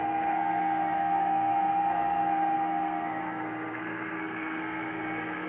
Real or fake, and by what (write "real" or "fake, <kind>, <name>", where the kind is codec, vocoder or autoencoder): fake, codec, SNAC